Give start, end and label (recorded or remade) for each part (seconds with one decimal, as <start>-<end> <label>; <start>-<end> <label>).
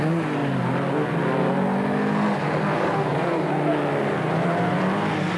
0.0-3.1 recorded; 3.1-3.7 remade; 3.7-5.4 recorded